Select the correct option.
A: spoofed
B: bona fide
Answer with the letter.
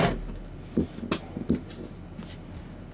B